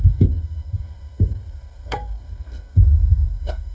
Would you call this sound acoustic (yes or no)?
no